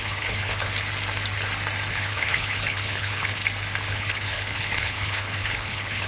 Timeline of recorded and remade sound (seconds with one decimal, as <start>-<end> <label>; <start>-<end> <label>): 0.0-0.7 remade; 0.7-1.9 recorded; 1.9-3.4 remade; 3.4-3.9 recorded; 3.9-6.1 remade

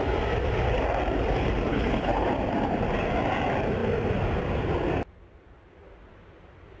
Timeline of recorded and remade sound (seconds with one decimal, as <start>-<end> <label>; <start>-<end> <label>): 0.0-1.7 recorded; 1.7-2.3 remade; 2.3-6.8 recorded

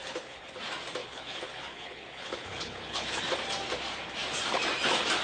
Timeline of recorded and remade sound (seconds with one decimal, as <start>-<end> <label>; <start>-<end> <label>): 0.0-0.6 remade; 0.6-1.0 recorded; 1.0-3.2 remade; 3.2-5.2 recorded

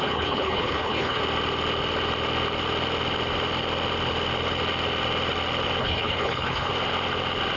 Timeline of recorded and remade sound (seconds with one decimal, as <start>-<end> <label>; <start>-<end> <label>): 0.0-1.2 remade; 1.2-5.8 recorded; 5.8-6.7 remade; 6.7-7.6 recorded